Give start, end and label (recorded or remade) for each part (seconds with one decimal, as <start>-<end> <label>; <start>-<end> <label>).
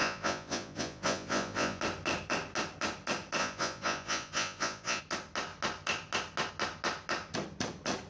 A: 0.0-1.8 remade; 1.8-3.4 recorded; 3.4-5.0 remade; 5.0-8.1 recorded